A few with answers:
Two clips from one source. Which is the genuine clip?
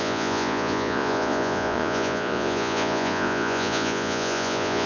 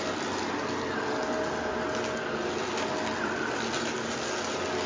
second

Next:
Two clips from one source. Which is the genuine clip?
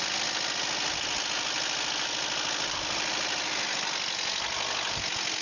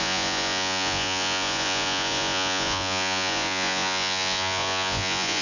first